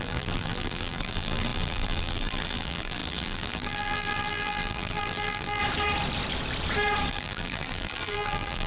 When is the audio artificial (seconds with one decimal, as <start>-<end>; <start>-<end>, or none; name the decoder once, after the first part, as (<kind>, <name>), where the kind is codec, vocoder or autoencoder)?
0.0-5.6 (vocoder, BigVGAN v2); 7.1-8.7